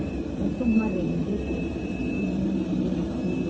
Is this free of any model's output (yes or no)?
no